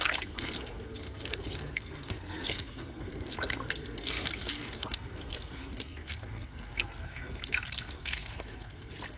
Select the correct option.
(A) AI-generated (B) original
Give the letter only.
A